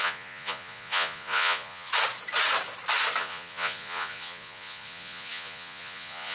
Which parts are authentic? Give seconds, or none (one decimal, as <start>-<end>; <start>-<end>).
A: 1.9-3.2